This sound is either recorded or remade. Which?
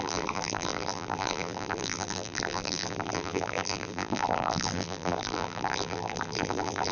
remade